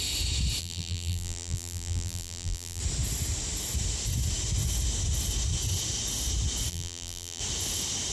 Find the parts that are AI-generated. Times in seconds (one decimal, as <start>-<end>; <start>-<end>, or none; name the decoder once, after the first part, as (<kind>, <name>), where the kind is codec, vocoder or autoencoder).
0.6-2.8 (vocoder, BigVGAN v2); 6.7-7.4